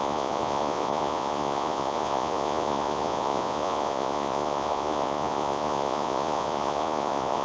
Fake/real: fake